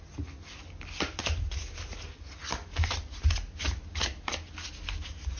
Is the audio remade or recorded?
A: recorded